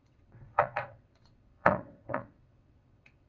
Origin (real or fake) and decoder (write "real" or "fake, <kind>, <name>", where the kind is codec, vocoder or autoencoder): fake, vocoder, WaveNeXt